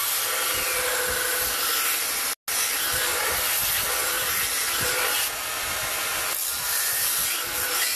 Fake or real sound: real